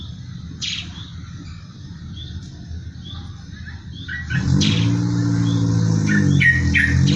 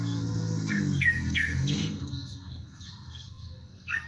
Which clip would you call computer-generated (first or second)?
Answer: second